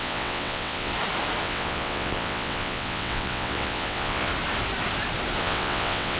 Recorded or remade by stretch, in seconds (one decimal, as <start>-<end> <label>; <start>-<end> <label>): 0.0-0.9 remade; 0.9-1.4 recorded; 1.4-4.3 remade; 4.3-5.4 recorded; 5.4-6.2 remade